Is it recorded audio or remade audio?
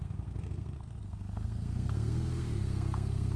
remade